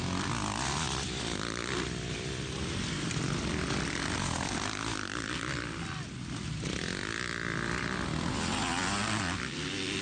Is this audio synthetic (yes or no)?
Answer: no